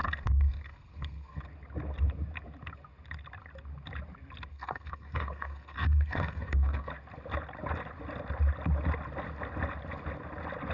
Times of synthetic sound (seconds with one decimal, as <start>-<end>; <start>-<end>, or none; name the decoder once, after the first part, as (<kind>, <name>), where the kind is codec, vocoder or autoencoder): 0.0-1.4 (codec, SNAC); 4.5-6.9